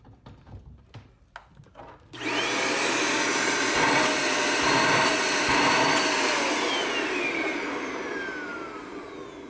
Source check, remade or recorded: recorded